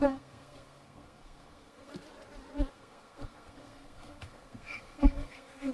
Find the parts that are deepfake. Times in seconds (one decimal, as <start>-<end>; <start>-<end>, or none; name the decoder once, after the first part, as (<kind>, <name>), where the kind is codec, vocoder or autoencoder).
0.0-1.9 (codec, SNAC); 2.7-5.7